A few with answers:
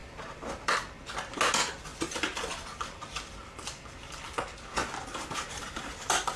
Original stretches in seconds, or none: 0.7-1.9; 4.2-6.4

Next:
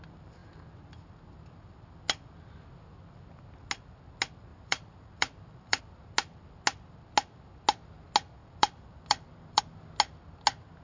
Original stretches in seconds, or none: 0.0-4.5; 5.8-8.4; 9.6-10.8

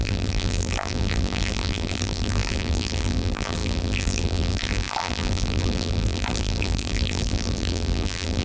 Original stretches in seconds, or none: none

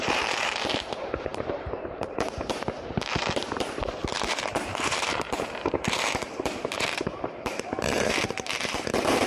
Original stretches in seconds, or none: none

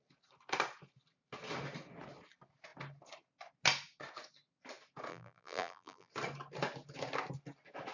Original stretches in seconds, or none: 0.0-5.1; 6.1-7.9